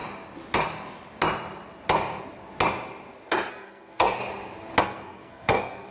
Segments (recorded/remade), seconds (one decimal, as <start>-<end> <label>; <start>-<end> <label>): 0.0-3.5 recorded; 3.5-4.2 remade; 4.2-4.8 recorded; 4.8-5.9 remade

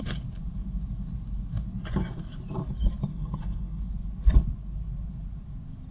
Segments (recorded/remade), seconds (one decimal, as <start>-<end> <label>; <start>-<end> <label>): 0.0-3.1 recorded; 3.1-3.8 remade; 3.8-5.9 recorded

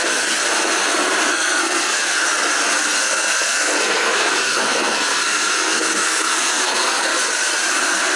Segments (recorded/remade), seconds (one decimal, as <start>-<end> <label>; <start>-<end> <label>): 0.0-0.4 remade; 0.4-1.3 recorded; 1.3-2.2 remade; 2.2-3.0 recorded; 3.0-7.1 remade; 7.1-7.7 recorded; 7.7-8.2 remade

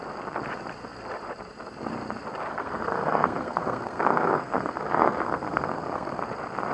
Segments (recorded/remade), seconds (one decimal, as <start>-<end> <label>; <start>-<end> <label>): 0.0-2.5 recorded; 2.5-6.2 remade; 6.2-6.7 recorded

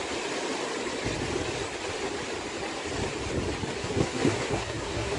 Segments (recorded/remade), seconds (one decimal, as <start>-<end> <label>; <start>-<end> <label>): 0.0-3.8 recorded; 3.8-5.2 remade

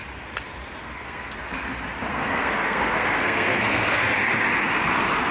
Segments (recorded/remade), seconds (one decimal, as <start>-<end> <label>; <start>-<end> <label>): 0.0-0.8 recorded; 0.8-1.4 remade; 1.4-2.1 recorded; 2.1-4.0 remade; 4.0-5.3 recorded

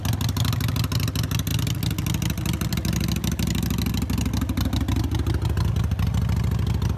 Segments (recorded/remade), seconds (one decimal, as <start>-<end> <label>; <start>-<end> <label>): 0.0-7.0 recorded